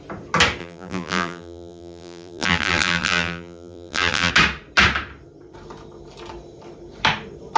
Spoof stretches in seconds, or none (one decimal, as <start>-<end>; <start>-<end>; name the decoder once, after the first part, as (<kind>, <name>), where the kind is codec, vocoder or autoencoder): 0.6-4.3 (vocoder, BigVGAN v2)